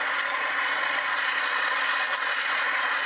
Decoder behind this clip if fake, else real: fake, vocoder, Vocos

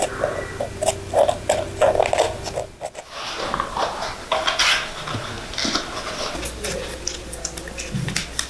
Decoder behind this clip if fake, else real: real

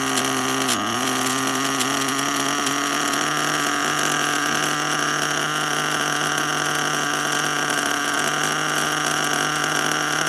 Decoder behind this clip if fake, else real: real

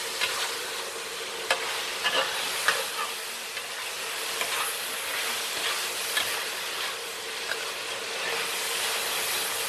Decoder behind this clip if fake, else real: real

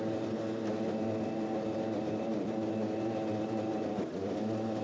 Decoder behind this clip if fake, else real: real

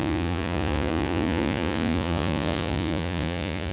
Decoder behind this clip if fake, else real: fake, vocoder, Vocos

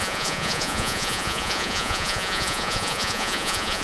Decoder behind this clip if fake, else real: fake, vocoder, Vocos